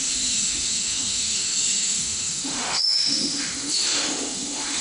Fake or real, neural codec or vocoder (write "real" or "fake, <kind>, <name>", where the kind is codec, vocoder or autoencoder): fake, autoencoder, DAC-VAE